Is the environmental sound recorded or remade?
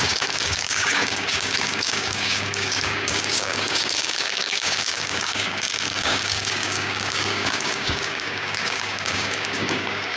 remade